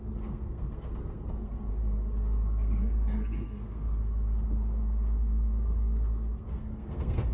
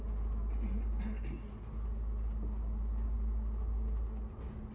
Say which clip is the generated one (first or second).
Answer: first